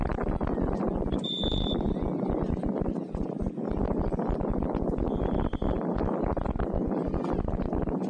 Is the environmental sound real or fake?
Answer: real